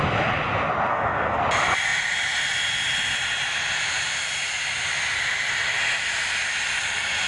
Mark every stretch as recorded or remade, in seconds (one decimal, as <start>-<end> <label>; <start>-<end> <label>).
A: 0.0-0.9 recorded; 0.9-1.4 remade; 1.4-7.3 recorded